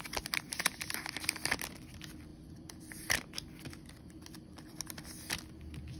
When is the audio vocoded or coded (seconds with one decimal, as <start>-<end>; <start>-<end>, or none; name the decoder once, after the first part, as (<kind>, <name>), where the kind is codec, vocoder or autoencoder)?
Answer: none